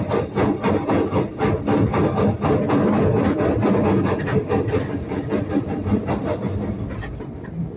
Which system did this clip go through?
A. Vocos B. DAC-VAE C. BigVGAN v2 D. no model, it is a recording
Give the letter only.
D